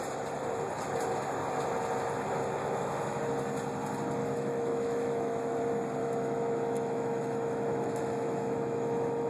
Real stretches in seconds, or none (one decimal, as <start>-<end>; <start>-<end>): 0.0-2.6; 3.2-4.2; 5.6-6.0